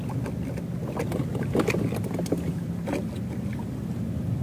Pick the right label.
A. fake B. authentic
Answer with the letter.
B